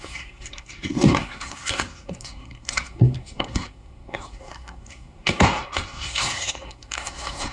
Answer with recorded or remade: remade